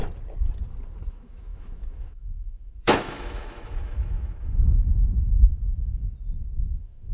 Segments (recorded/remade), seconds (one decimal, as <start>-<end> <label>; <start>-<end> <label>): 0.0-1.1 recorded; 1.1-6.0 remade; 6.0-6.6 recorded; 6.6-7.1 remade